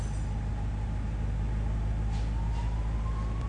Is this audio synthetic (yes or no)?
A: no